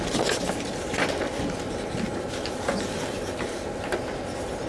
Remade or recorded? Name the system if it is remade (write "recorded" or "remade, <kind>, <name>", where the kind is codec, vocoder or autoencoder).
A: recorded